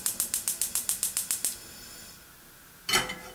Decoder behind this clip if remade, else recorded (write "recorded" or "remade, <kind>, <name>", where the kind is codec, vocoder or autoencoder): recorded